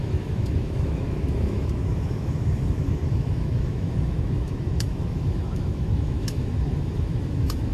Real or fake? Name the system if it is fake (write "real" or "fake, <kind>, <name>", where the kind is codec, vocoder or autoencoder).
fake, autoencoder, DAC-VAE